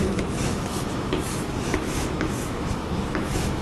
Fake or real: fake